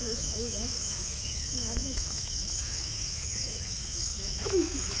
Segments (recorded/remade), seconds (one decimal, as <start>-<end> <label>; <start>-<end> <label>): 0.0-5.0 remade